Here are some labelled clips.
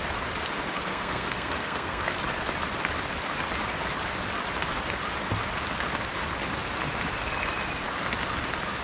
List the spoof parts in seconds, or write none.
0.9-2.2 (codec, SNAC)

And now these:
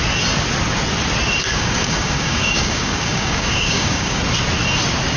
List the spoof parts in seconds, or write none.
1.5-4.2 (codec, DAC)

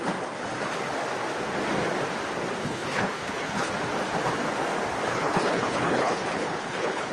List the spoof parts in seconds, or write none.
2.6-3.7 (codec, HILCodec); 5.1-7.1